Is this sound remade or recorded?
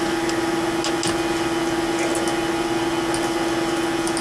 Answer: recorded